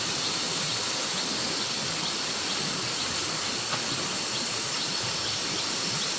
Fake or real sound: real